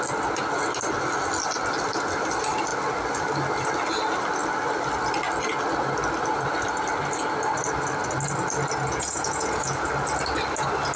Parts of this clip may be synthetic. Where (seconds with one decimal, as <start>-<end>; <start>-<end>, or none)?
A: 8.9-9.9